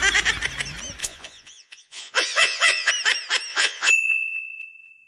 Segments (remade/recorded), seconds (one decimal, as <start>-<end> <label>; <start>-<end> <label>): 0.0-1.0 recorded; 1.0-2.9 remade; 2.9-3.5 recorded; 3.5-5.1 remade